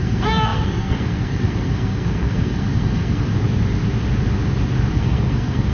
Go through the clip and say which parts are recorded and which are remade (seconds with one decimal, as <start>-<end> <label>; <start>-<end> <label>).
0.0-3.3 remade; 3.3-4.9 recorded; 4.9-5.7 remade